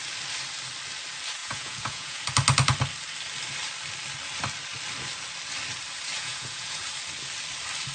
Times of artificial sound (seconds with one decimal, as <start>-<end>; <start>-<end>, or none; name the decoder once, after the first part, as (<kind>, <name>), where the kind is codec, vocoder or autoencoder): 1.4-2.2 (vocoder, Vocos); 6.2-6.8